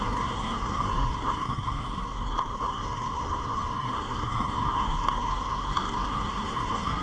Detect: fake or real fake